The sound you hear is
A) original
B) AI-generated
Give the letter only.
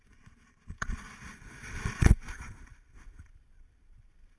B